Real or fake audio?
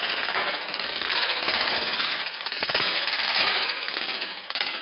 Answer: fake